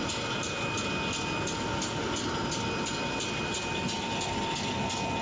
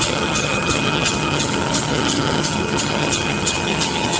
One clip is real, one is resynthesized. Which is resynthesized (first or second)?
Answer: second